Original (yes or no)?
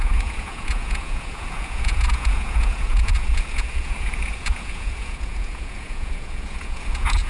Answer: no